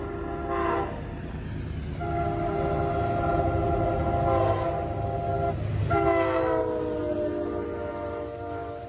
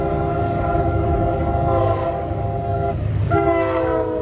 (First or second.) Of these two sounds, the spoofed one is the second